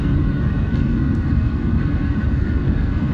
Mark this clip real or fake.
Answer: fake